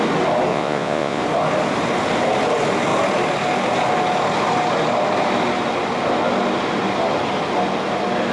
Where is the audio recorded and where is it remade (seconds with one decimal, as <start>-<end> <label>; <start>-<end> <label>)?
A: 0.0-0.5 recorded; 0.5-1.2 remade; 1.2-8.3 recorded